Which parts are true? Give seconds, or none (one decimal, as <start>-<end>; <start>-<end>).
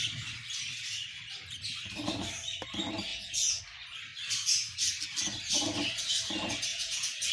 0.0-3.1; 3.6-6.7